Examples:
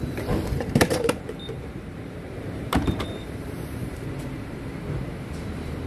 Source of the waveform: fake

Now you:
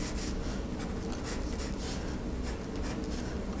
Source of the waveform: real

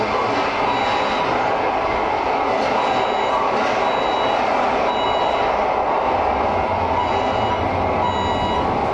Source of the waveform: real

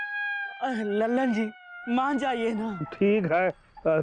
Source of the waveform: real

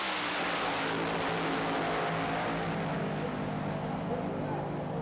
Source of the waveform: real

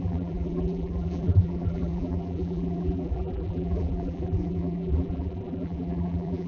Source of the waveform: fake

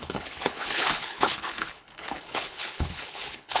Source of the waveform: fake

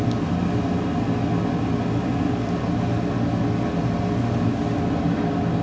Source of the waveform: real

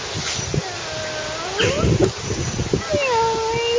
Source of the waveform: real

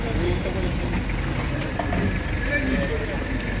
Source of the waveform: real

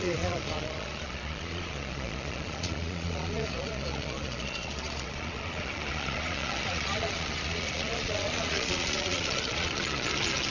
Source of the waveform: fake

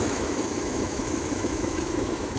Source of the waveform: fake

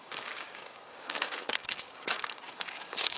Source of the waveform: fake